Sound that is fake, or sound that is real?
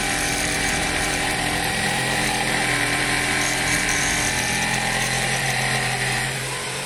fake